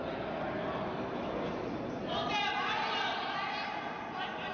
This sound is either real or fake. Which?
real